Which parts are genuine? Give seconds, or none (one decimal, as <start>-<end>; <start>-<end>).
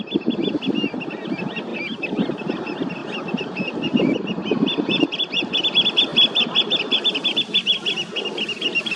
0.0-3.0; 5.6-6.1; 7.2-9.0